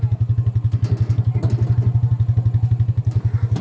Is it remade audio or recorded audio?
recorded